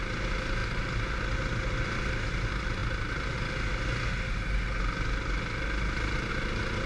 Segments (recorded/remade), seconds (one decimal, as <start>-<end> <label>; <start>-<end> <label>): 0.0-6.9 recorded